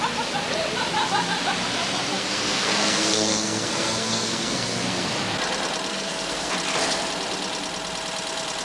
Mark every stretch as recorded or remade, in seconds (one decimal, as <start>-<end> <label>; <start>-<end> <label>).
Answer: 0.0-2.1 recorded; 2.1-5.1 remade; 5.1-5.9 recorded; 5.9-6.5 remade; 6.5-8.6 recorded